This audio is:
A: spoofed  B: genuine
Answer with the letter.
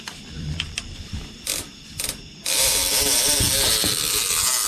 A